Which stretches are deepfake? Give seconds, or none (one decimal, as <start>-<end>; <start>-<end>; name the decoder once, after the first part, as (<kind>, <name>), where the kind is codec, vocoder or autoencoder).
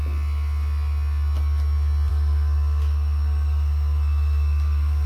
2.1-5.1 (codec, SNAC)